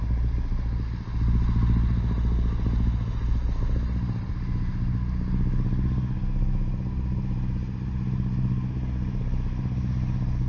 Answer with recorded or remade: recorded